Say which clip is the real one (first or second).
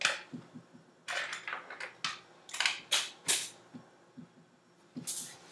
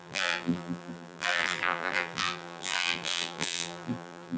first